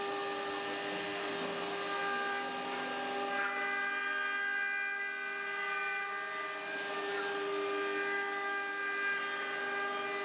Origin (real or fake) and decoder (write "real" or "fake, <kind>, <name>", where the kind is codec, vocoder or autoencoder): real